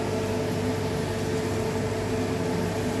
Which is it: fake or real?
real